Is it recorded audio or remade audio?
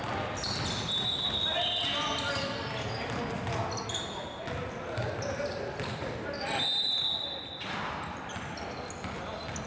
recorded